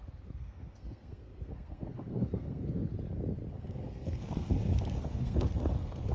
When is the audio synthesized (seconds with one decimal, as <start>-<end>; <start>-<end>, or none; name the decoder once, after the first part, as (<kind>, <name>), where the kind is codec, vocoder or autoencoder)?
0.0-2.9 (codec, SNAC); 3.5-6.1